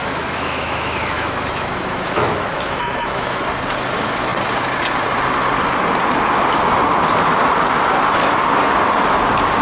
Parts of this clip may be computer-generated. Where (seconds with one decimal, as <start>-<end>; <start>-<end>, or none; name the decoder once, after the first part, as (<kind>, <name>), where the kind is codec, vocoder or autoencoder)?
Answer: 0.0-3.4 (autoencoder, DAC-VAE)